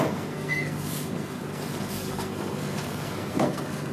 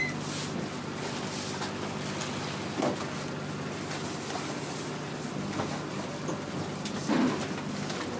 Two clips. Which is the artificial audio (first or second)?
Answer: first